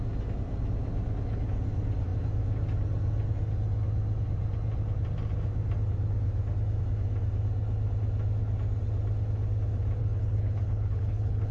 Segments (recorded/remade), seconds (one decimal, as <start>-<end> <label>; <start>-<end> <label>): 0.0-10.0 recorded; 10.0-11.5 remade